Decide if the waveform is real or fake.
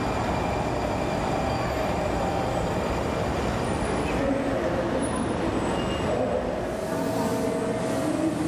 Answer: real